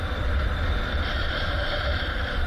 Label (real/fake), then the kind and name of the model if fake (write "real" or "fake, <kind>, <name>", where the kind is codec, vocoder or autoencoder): fake, vocoder, BigVGAN v2